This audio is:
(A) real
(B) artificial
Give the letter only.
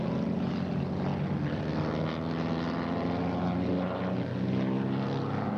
A